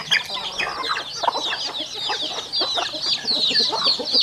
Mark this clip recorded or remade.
recorded